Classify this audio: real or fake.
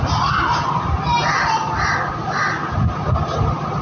real